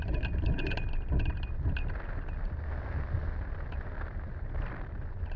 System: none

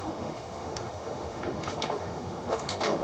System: autoencoder, DAC-VAE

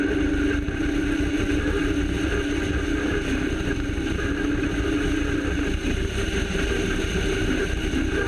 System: none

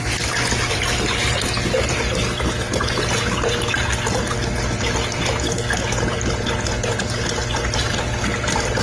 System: none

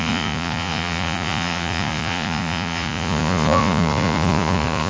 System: vocoder, Vocos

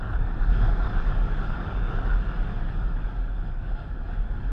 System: codec, DAC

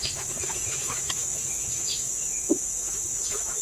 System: autoencoder, DAC-VAE